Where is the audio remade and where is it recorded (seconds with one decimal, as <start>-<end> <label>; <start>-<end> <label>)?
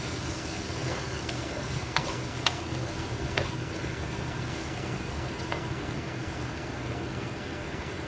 0.0-8.1 remade